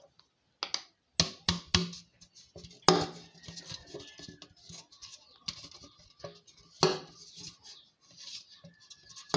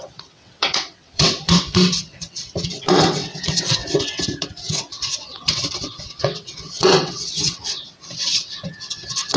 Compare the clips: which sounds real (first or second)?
first